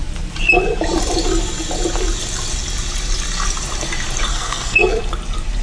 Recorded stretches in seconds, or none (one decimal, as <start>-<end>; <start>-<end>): 0.0-4.3; 5.0-5.6